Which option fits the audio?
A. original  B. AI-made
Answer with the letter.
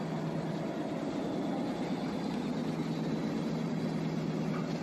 A